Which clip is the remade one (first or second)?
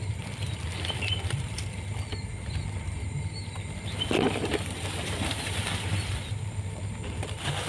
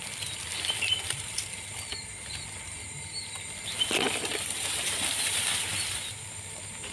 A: first